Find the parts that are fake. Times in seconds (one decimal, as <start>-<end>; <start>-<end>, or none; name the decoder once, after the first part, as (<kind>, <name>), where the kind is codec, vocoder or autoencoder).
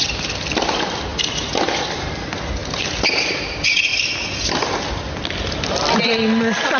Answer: none